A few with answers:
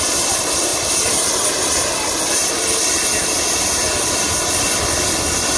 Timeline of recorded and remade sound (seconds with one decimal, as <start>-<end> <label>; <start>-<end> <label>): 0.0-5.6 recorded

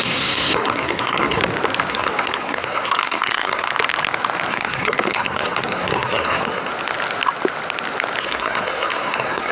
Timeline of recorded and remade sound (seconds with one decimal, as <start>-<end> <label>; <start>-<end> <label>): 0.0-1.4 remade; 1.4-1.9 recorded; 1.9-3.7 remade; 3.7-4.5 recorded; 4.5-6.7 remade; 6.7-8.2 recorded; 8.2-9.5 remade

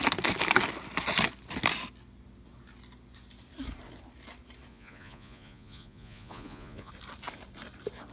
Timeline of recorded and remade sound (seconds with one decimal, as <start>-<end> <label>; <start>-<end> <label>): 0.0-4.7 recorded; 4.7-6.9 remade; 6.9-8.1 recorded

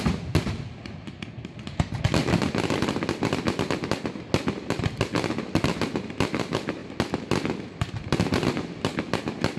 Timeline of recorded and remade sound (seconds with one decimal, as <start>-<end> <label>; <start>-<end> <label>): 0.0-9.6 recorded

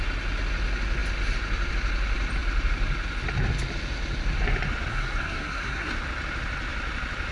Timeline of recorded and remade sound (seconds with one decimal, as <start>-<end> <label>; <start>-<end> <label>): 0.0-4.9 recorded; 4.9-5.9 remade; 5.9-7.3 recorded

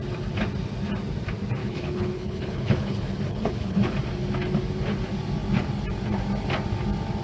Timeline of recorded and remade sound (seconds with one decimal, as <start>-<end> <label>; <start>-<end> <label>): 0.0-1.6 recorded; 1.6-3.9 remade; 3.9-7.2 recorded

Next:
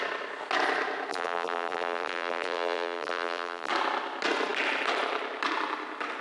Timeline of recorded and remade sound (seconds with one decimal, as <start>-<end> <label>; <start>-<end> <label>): 0.0-1.1 recorded; 1.1-3.7 remade; 3.7-6.2 recorded